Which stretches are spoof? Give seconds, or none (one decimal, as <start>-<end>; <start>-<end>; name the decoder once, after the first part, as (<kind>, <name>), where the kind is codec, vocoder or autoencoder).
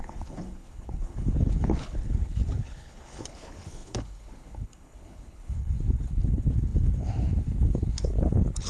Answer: 0.0-8.7 (codec, HILCodec)